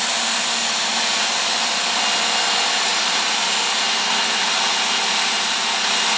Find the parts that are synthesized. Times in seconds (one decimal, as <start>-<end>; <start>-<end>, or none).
none